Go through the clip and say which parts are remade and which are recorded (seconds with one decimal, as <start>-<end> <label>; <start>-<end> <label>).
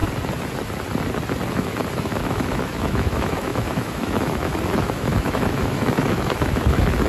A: 0.0-1.5 recorded; 1.5-7.1 remade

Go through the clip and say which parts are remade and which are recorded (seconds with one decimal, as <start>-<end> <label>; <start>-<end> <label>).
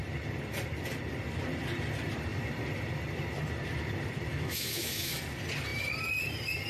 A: 0.0-4.3 recorded; 4.3-5.2 remade; 5.2-6.7 recorded